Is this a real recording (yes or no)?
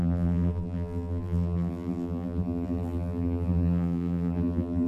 no